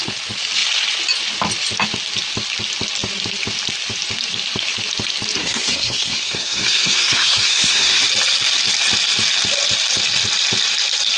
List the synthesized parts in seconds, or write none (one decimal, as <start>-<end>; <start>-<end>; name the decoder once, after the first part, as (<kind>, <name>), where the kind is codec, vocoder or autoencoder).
5.4-8.0 (codec, SNAC)